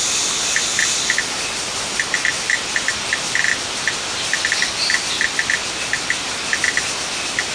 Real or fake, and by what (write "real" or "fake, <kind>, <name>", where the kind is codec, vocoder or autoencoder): real